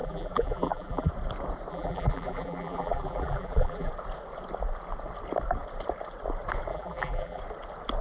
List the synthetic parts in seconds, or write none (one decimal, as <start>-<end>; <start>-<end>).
0.0-1.1; 1.7-3.9; 6.7-7.4